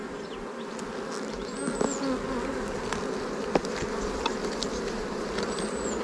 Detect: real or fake real